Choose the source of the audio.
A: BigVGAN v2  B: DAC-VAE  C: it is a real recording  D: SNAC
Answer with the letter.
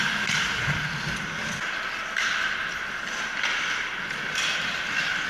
C